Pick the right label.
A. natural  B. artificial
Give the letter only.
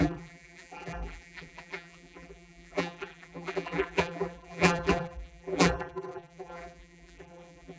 B